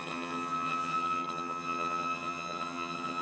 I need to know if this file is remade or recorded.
remade